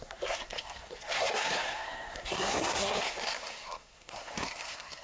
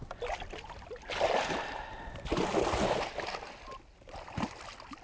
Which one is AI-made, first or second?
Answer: first